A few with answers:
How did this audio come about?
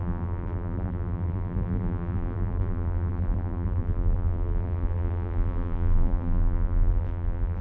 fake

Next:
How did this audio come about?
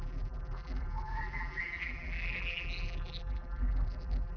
fake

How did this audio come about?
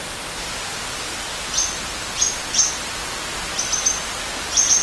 real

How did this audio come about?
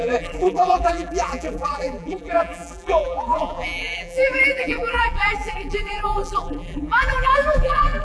fake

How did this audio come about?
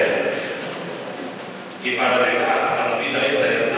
real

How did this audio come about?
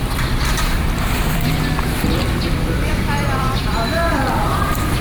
fake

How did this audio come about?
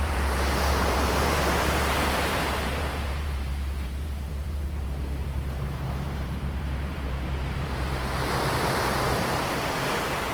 fake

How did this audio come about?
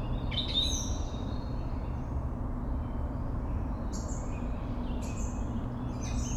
real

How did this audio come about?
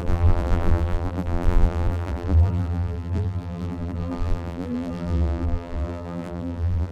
fake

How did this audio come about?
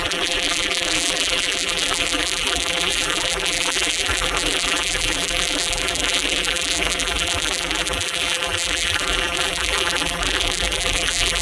fake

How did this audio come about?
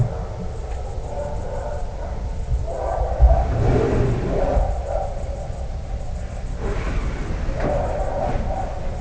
real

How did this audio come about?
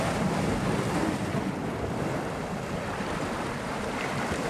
real